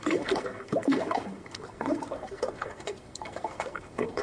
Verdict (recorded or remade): remade